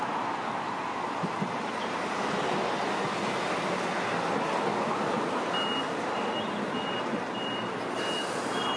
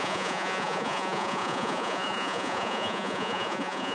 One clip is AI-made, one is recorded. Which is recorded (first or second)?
first